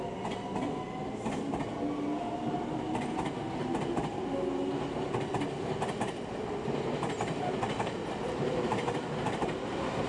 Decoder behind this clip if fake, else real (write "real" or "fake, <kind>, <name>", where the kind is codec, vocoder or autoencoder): real